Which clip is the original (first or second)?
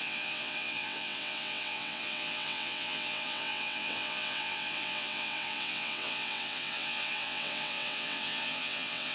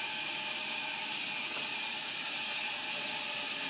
second